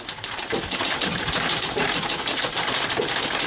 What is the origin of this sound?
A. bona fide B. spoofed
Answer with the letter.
A